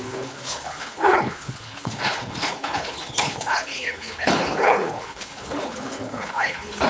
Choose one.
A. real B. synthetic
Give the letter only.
B